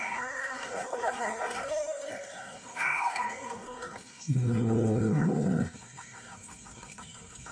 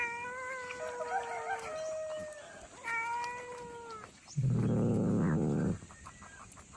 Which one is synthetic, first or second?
first